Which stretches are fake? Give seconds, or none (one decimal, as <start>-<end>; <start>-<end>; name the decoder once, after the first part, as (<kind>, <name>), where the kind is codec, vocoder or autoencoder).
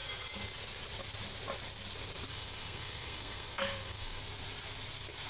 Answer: 2.3-4.2 (codec, SNAC)